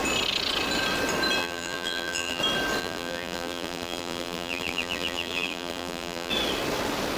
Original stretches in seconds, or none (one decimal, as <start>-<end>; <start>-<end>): 0.0-1.4; 2.4-2.8; 6.3-7.2